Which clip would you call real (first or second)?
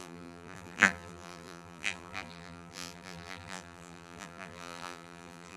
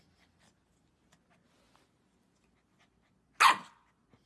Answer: second